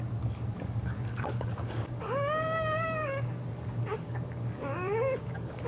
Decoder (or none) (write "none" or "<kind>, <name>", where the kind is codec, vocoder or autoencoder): codec, DAC